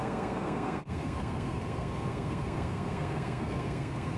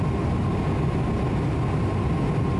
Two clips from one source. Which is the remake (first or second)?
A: first